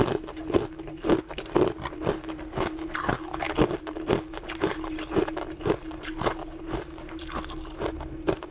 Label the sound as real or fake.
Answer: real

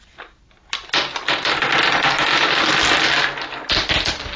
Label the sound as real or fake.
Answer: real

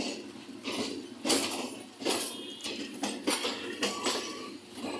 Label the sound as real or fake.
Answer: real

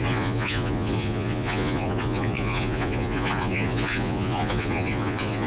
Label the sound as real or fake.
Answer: fake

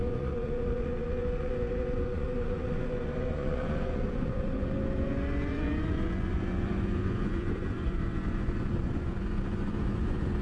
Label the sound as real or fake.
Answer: fake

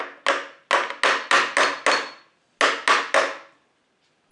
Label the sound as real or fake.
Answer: real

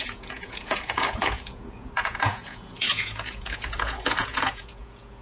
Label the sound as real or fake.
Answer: fake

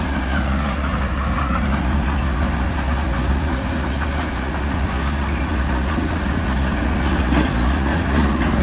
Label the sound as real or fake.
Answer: fake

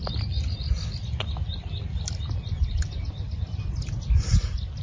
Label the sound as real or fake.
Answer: real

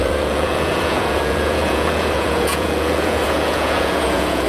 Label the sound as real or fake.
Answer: fake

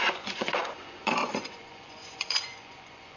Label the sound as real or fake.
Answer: fake